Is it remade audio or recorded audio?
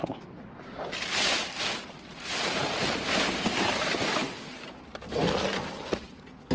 recorded